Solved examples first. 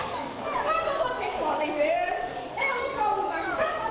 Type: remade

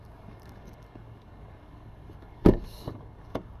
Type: remade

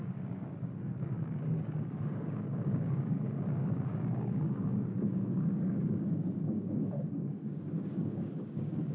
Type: remade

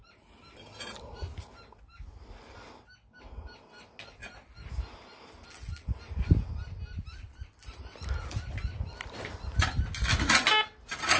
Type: recorded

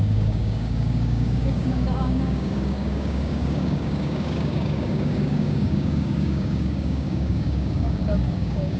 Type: remade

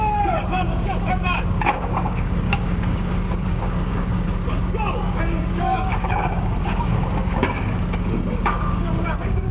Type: remade